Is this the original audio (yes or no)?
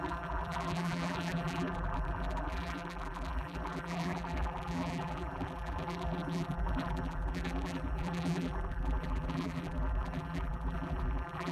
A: no